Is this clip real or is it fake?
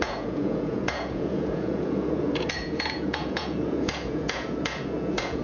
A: fake